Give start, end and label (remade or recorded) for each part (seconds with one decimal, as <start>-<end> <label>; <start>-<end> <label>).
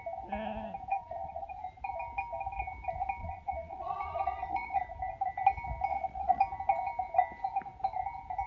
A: 0.0-0.9 recorded; 0.9-1.5 remade; 1.5-3.2 recorded; 3.2-4.8 remade; 4.8-5.9 recorded; 5.9-6.4 remade; 6.4-8.5 recorded